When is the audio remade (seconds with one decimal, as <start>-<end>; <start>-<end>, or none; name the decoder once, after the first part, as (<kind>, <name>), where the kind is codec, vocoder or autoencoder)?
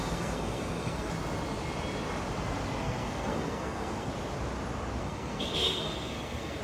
0.0-1.1 (codec, SNAC); 2.8-4.1; 5.0-6.6